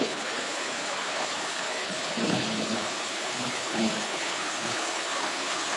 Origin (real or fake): fake